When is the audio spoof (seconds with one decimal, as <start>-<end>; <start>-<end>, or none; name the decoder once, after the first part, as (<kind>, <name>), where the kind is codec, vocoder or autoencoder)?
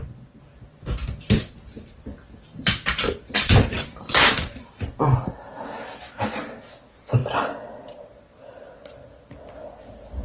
2.1-4.3 (vocoder, BigVGAN v2); 7.2-7.7